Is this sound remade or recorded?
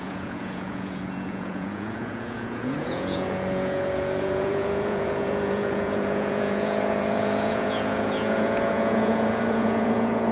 remade